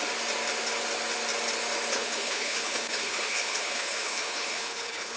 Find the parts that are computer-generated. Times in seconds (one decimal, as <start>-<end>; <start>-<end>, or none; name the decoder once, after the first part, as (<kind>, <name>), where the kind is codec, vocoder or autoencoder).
1.9-5.2 (codec, HILCodec)